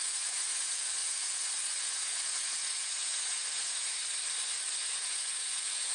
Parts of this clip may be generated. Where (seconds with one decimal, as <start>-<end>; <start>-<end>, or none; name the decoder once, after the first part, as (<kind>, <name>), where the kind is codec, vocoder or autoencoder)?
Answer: 0.0-4.0 (vocoder, Vocos); 4.7-5.9